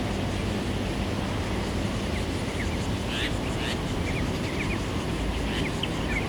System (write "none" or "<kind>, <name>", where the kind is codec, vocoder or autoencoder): none